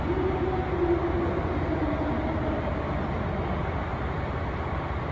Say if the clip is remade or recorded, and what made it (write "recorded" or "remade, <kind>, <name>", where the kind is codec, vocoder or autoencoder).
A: recorded